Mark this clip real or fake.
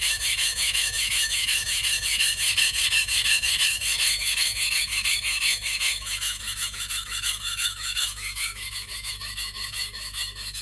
fake